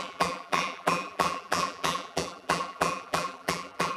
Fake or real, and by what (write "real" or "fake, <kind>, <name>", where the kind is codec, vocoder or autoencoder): fake, vocoder, BigVGAN v2